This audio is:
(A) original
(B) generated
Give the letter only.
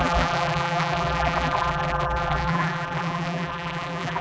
B